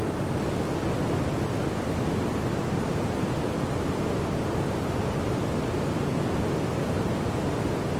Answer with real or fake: real